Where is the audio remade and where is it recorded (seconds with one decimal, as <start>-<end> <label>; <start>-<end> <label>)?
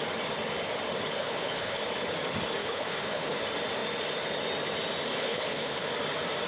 0.0-1.2 recorded; 1.2-1.8 remade; 1.8-2.6 recorded; 2.6-3.4 remade; 3.4-5.1 recorded; 5.1-5.9 remade; 5.9-6.5 recorded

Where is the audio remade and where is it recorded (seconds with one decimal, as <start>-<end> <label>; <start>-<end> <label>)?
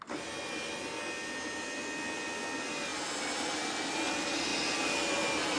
0.0-5.6 recorded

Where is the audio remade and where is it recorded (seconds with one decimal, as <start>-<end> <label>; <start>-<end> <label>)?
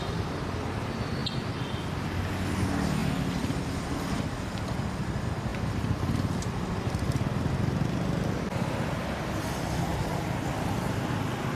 0.0-11.6 recorded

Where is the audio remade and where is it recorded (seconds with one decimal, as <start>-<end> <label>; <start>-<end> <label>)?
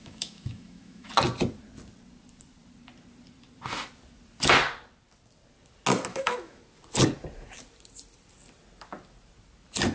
0.0-1.1 remade; 1.1-6.1 recorded; 6.1-6.6 remade; 6.6-9.9 recorded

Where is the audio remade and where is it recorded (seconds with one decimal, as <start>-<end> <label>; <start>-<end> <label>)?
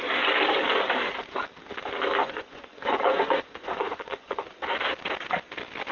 0.0-2.2 recorded; 2.2-4.5 remade; 4.5-5.9 recorded